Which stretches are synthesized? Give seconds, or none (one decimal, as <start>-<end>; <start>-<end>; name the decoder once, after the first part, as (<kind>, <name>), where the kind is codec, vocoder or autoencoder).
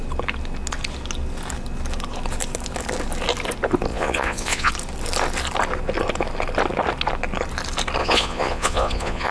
3.9-4.7 (vocoder, Vocos); 8.0-9.3